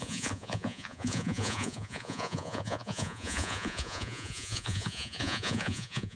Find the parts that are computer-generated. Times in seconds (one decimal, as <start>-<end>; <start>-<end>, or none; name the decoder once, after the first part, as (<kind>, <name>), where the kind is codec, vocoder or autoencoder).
0.0-6.2 (vocoder, Vocos)